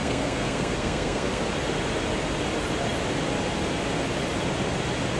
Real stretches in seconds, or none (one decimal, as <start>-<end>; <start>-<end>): 1.4-5.2